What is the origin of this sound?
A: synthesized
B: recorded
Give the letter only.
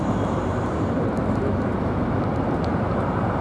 A